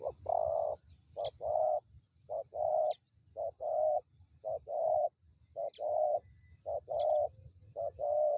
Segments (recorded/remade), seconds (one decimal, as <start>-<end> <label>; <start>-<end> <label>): 0.0-8.4 recorded